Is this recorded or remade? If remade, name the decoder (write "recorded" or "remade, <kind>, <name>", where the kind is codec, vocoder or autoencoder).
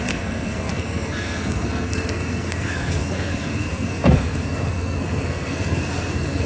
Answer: remade, codec, SNAC